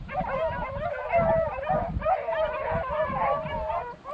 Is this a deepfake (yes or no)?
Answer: no